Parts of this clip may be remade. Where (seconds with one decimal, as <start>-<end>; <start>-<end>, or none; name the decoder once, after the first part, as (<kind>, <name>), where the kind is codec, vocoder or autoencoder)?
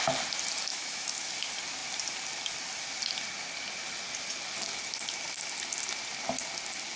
0.7-1.3 (autoencoder, DAC-VAE)